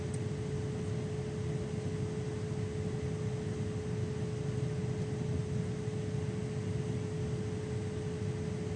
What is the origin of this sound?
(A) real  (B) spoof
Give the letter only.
A